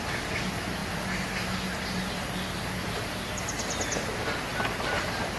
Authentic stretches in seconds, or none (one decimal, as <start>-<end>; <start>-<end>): 0.0-0.8; 2.6-4.5